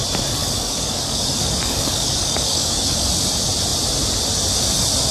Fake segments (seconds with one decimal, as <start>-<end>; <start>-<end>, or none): 0.4-3.1